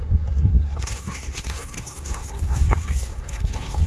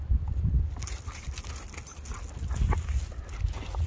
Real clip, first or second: second